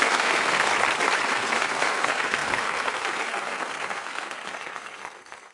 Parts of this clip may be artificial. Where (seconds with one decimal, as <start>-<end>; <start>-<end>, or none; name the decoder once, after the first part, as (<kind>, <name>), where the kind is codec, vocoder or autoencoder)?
0.0-0.7 (codec, SNAC); 1.3-5.5